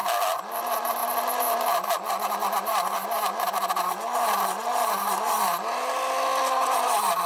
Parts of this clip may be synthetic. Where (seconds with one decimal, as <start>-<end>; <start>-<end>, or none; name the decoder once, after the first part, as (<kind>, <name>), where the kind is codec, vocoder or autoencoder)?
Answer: none